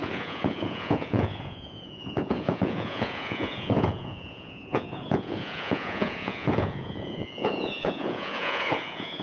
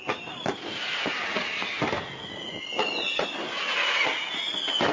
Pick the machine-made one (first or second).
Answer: first